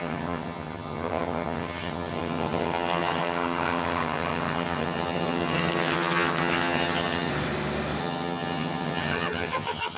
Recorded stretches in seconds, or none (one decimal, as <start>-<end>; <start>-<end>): 7.3-8.0

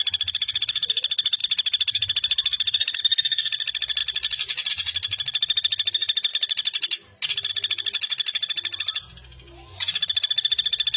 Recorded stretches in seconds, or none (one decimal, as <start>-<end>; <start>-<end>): 0.0-1.4; 3.0-6.3; 7.5-11.0